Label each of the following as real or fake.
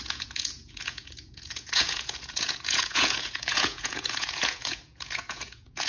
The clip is fake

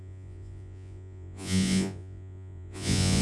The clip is fake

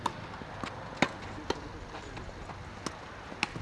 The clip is real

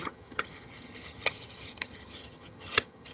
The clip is fake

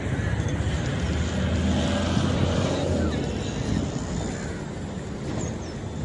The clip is real